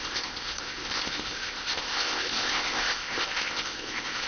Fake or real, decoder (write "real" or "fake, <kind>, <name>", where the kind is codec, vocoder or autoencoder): fake, codec, ZipCodec